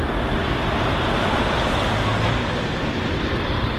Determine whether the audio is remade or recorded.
recorded